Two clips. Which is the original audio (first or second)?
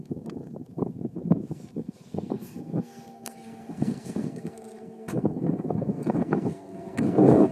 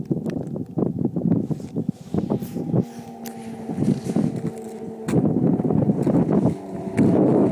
second